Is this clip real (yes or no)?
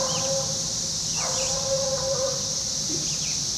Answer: yes